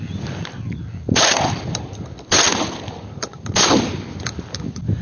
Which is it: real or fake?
real